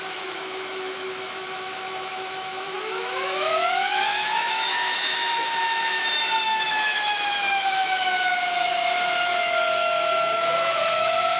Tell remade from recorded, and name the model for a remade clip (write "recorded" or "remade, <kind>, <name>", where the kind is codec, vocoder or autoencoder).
remade, autoencoder, DAC-VAE